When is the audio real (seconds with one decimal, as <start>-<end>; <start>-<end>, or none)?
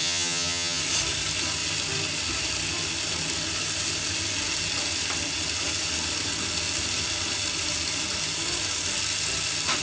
0.8-9.8